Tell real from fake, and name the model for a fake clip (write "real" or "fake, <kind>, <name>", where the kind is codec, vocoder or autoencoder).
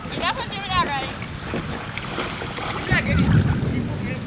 real